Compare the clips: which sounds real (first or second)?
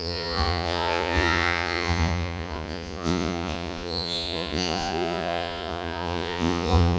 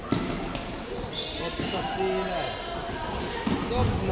second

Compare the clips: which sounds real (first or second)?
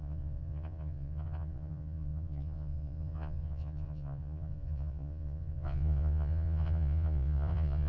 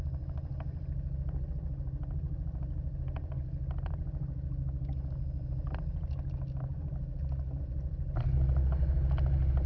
second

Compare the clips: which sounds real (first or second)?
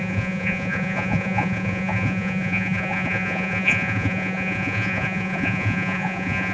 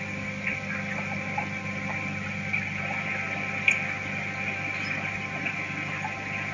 second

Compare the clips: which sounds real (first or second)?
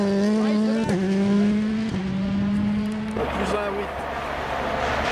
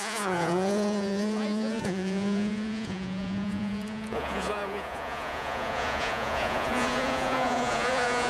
first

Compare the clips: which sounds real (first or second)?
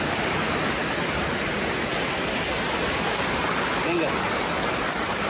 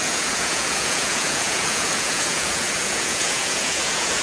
first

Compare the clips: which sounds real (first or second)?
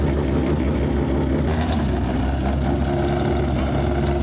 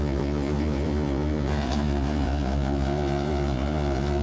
first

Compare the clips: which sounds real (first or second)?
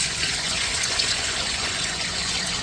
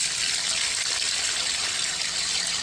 second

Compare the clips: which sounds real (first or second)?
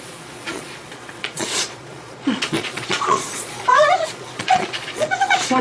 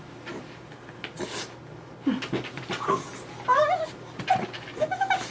second